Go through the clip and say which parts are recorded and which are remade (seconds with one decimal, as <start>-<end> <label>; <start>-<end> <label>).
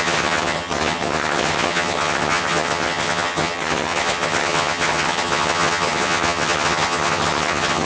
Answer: 0.0-7.9 remade